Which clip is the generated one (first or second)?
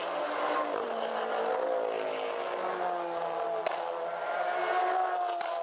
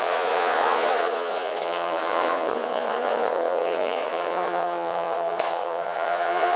second